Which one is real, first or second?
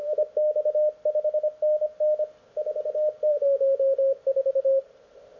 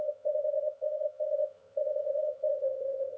first